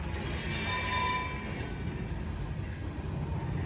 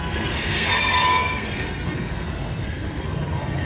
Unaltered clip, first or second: first